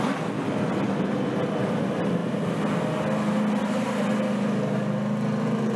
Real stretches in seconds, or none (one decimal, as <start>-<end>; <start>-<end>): 0.0-5.8